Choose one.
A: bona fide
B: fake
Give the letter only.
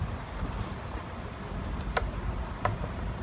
A